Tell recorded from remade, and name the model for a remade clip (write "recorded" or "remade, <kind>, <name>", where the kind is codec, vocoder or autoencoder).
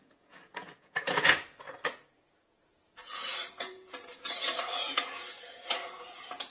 remade, vocoder, Vocos